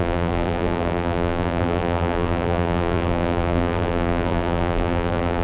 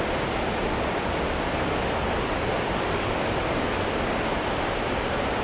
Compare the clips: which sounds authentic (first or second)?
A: second